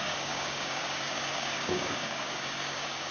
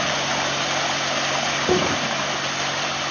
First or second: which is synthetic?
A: first